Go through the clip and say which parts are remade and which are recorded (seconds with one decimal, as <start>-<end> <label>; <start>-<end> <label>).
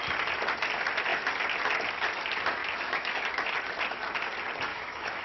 0.0-2.6 recorded; 2.6-3.5 remade; 3.5-4.7 recorded; 4.7-5.2 remade